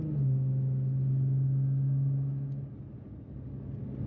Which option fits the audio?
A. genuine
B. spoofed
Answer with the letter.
A